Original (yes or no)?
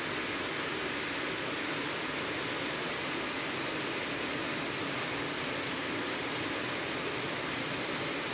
yes